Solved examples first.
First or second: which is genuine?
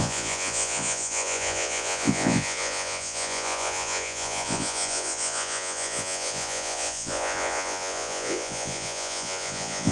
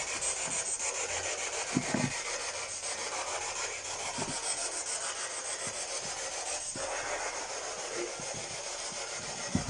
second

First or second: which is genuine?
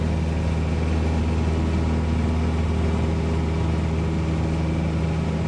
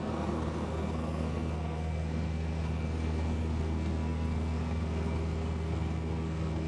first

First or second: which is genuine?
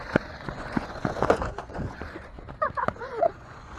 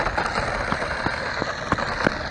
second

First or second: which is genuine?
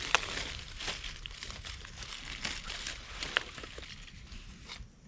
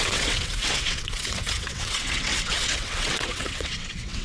first